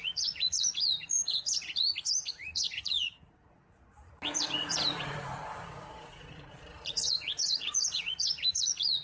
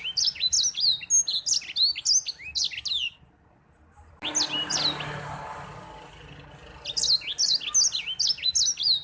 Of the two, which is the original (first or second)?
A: second